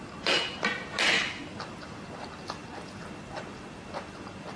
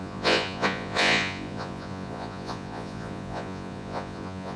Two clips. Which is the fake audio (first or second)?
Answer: second